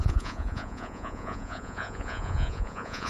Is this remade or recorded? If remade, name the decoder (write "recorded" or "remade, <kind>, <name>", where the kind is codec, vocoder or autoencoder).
remade, vocoder, Vocos